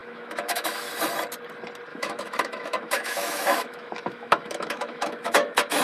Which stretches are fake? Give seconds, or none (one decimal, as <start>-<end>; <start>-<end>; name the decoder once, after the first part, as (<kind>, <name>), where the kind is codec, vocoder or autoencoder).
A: 0.0-0.9 (autoencoder, DAC-VAE); 1.9-5.8

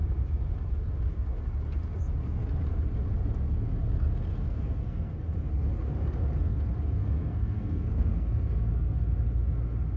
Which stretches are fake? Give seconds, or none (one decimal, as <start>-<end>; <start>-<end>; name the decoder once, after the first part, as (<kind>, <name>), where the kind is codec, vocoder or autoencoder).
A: 4.3-5.1 (codec, SNAC); 7.0-9.0

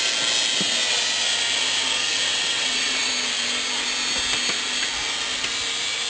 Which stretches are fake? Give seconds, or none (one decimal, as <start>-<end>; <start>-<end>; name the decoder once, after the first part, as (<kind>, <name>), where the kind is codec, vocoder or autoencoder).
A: 2.3-3.1 (vocoder, WaveNeXt)

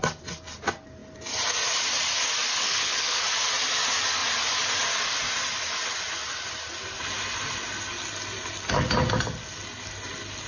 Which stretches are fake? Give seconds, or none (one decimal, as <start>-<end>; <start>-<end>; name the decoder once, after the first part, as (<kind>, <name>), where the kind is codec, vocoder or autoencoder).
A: 2.6-3.2 (codec, HILCodec)

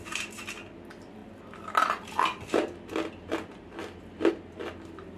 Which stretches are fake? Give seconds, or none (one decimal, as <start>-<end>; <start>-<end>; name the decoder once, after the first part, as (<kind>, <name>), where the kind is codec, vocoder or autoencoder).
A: none

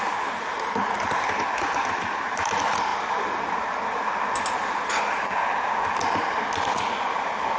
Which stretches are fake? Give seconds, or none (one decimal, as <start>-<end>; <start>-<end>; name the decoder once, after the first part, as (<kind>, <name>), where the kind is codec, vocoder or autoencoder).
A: none